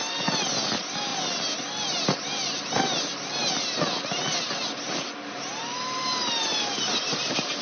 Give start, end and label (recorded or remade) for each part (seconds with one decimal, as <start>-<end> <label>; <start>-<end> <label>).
0.0-7.6 recorded